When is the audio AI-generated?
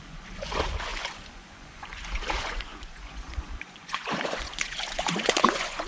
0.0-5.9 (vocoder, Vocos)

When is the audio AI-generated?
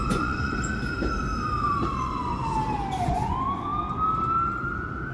0.0-0.5 (vocoder, Vocos); 2.0-2.4; 3.1-3.7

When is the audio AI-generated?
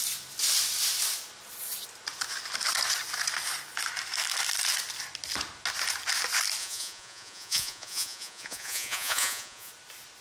6.6-9.7 (vocoder, Vocos)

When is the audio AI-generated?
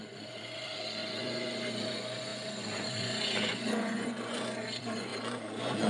0.0-5.9 (vocoder, Vocos)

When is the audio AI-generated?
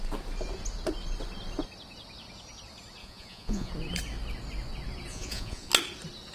3.0-3.7 (vocoder, Vocos); 5.1-5.7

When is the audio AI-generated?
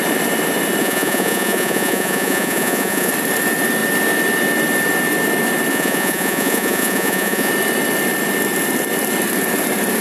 0.8-3.1 (vocoder, Vocos); 5.7-7.5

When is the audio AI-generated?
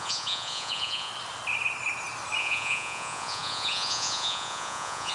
0.0-1.1 (vocoder, Vocos); 2.4-5.1